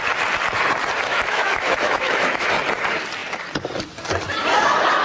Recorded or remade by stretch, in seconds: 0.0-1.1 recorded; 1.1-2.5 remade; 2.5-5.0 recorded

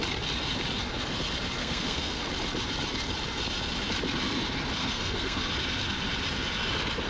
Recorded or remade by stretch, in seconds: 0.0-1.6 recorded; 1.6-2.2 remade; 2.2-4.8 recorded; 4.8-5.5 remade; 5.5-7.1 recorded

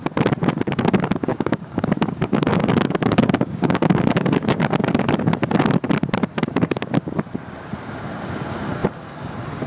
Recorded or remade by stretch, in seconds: 0.0-1.3 recorded; 1.3-4.9 remade; 4.9-9.7 recorded